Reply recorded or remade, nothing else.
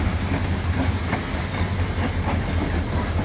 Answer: recorded